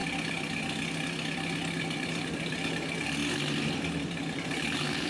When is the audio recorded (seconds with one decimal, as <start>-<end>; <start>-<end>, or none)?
0.0-1.8; 3.2-4.3